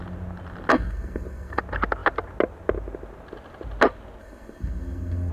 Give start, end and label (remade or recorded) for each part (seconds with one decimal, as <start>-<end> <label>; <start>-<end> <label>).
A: 0.0-0.7 recorded; 0.7-1.6 remade; 1.6-4.2 recorded; 4.2-5.3 remade